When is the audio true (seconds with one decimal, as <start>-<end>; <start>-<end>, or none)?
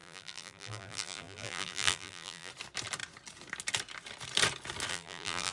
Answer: 2.5-4.9